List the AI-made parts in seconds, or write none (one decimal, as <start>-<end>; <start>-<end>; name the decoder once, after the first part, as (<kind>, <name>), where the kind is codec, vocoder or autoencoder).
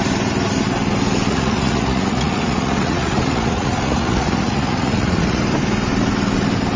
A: 1.3-5.4 (vocoder, Vocos)